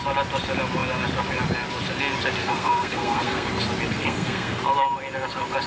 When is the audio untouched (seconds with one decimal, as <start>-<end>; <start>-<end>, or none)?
0.0-2.4; 3.5-3.9; 4.6-5.7